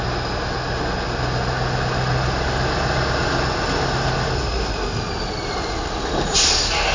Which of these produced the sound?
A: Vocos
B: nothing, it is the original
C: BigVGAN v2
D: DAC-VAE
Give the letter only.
B